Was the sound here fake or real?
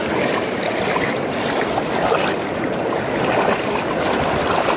real